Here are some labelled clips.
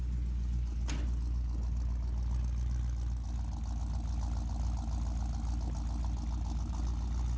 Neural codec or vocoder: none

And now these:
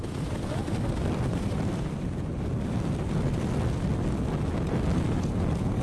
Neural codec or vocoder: none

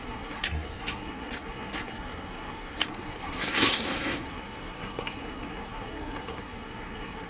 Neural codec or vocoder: codec, SNAC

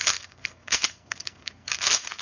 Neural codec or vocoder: codec, SNAC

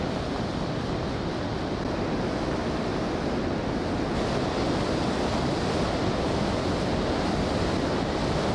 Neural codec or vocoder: none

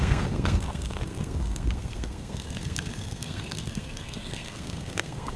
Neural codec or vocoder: codec, SNAC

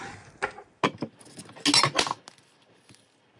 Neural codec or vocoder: none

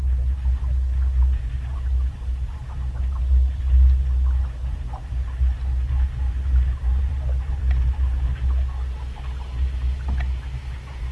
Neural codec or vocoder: none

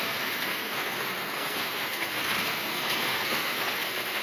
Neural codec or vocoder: codec, SNAC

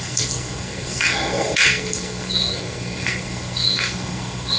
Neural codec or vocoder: codec, SNAC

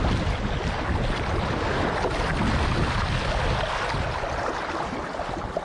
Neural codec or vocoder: none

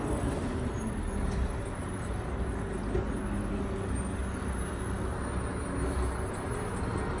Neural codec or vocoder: none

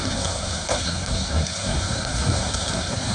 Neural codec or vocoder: codec, SNAC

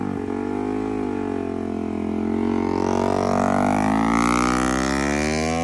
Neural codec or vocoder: none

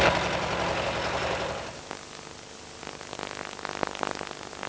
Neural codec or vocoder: none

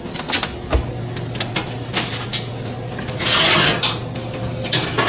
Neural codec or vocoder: none